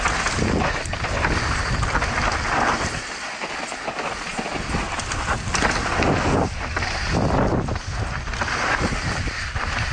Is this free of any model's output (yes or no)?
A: yes